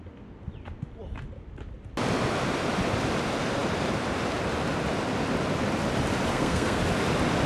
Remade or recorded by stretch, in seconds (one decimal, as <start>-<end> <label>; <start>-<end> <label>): 0.0-6.3 recorded; 6.3-6.8 remade; 6.8-7.5 recorded